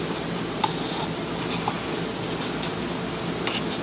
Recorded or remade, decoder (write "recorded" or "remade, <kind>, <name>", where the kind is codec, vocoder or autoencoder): recorded